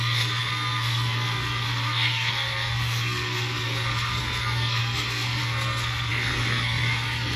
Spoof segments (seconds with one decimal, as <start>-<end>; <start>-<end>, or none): 0.0-7.4